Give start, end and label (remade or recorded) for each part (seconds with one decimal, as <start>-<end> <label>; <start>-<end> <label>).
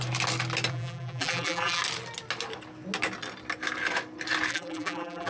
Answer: 0.0-0.7 recorded; 0.7-1.8 remade; 1.8-4.5 recorded; 4.5-5.3 remade